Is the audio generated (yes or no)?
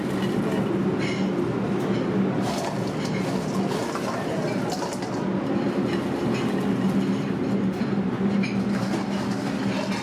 no